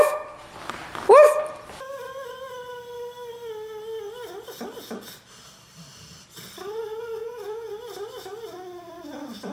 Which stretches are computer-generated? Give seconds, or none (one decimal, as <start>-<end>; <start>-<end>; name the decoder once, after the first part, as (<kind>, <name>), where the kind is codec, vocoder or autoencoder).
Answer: 7.2-7.7 (vocoder, Vocos)